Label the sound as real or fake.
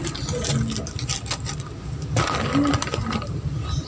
real